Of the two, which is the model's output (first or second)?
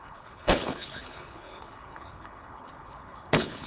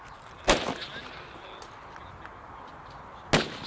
first